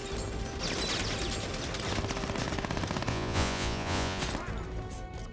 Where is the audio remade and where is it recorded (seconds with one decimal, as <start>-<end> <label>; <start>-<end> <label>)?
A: 0.0-3.1 recorded; 3.1-4.2 remade; 4.2-5.3 recorded